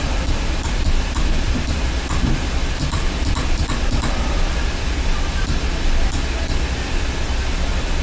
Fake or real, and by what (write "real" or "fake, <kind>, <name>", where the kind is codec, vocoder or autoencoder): fake, vocoder, BigVGAN v2